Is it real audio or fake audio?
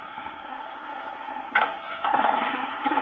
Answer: fake